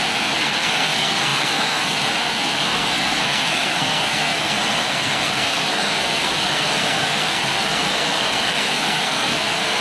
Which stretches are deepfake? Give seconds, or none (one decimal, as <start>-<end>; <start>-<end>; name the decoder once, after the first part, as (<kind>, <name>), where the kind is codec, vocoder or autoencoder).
0.0-9.8 (codec, SNAC)